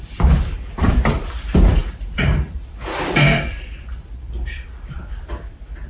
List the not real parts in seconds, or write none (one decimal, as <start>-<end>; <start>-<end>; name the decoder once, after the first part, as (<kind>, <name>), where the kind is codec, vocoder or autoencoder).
0.0-5.9 (vocoder, BigVGAN v2)